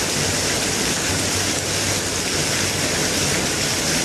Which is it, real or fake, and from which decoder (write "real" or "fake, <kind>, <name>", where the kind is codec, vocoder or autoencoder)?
real